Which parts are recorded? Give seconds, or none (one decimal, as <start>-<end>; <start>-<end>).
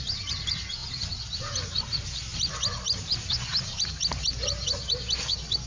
0.0-5.7